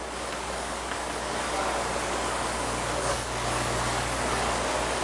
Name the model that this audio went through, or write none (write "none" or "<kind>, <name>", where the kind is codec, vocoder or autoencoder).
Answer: codec, DAC